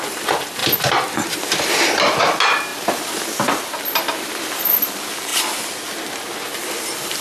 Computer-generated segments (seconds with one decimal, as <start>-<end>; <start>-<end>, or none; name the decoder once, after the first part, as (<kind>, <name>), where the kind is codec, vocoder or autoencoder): 2.7-4.4 (vocoder, BigVGAN v2)